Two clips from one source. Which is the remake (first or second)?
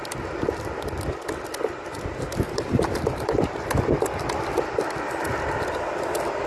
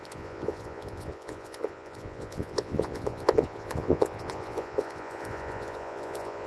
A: second